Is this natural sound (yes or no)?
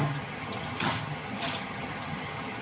no